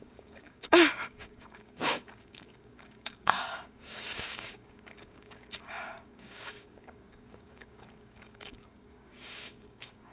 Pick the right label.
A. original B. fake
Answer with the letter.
B